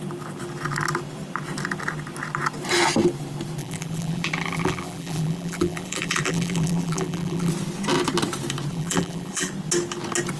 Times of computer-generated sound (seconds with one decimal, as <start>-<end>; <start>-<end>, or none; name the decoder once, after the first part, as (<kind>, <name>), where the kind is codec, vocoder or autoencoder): 3.6-7.5 (vocoder, BigVGAN v2); 8.7-9.5